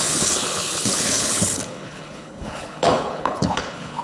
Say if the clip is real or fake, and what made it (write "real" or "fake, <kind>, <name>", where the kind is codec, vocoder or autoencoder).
fake, codec, HILCodec